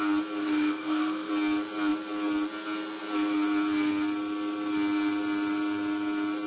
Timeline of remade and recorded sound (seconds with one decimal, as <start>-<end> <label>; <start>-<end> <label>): 0.0-0.4 recorded; 0.4-1.3 remade; 1.3-6.5 recorded